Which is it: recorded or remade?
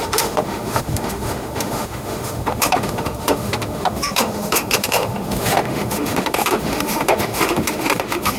remade